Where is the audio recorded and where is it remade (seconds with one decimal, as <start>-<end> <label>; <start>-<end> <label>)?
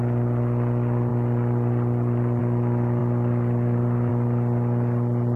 0.0-1.1 recorded; 1.1-2.4 remade; 2.4-3.0 recorded; 3.0-4.1 remade; 4.1-5.4 recorded